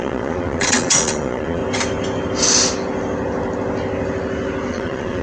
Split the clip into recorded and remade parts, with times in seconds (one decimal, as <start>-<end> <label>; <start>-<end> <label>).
0.0-1.6 remade; 1.6-4.7 recorded; 4.7-5.2 remade

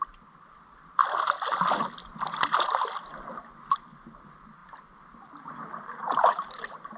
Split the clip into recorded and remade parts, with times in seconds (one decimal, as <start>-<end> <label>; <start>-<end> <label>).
0.0-7.0 recorded

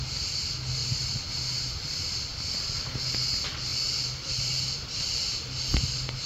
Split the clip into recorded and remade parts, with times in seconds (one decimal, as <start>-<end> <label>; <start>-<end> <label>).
0.0-0.8 recorded; 0.8-1.3 remade; 1.3-2.3 recorded; 2.3-3.2 remade; 3.2-3.7 recorded; 3.7-6.3 remade